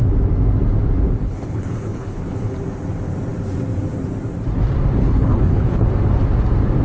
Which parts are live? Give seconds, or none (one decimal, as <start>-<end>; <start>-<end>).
0.0-1.2; 2.5-5.0; 5.9-6.8